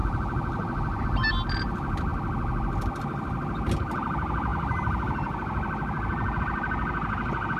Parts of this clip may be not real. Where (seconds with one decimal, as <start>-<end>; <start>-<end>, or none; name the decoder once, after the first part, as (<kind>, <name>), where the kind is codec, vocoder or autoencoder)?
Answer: none